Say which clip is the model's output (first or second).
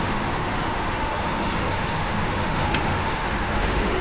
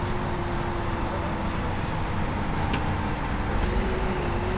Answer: first